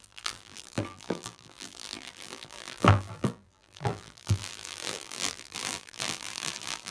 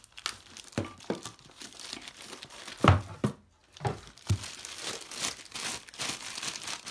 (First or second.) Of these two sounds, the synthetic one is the first